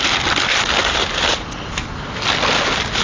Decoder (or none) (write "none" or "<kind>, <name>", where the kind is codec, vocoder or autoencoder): none